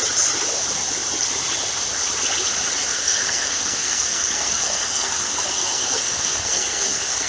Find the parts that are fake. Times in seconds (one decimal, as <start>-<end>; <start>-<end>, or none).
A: 2.9-7.3